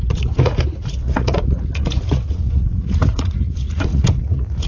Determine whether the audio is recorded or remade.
remade